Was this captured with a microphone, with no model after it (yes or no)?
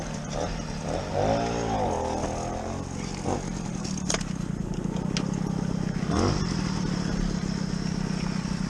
yes